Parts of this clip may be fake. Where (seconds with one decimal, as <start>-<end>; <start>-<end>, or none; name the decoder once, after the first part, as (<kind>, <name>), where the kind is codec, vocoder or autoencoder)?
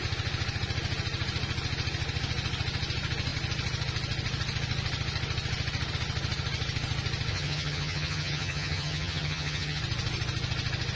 7.3-9.8 (vocoder, HiFi-GAN)